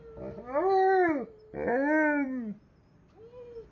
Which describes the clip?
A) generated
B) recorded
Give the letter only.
B